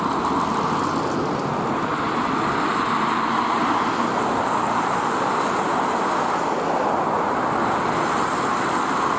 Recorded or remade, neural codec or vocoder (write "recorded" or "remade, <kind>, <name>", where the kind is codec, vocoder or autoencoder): recorded